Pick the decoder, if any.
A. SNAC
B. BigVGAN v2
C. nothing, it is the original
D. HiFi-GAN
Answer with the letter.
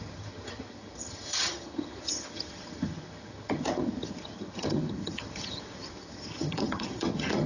D